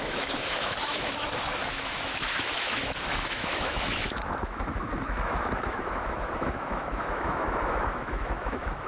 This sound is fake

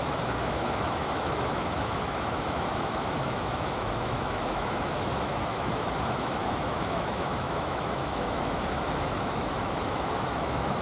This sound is fake